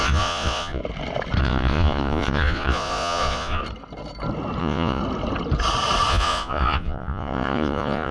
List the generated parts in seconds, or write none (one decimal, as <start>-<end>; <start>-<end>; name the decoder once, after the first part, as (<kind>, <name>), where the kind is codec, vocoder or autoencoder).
0.0-0.8 (vocoder, Vocos); 1.4-3.6; 4.6-5.0; 6.1-8.1